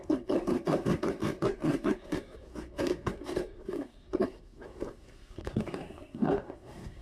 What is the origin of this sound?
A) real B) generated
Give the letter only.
B